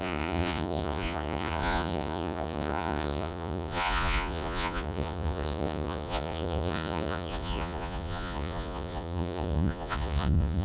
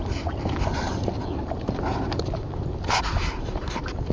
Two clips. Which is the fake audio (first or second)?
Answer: first